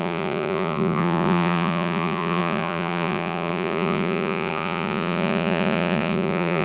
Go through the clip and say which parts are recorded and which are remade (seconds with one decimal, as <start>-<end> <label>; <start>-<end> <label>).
0.0-6.6 remade